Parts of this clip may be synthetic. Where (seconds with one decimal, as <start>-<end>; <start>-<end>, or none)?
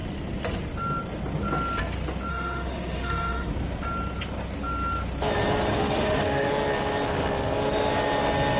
2.3-3.5; 5.7-6.5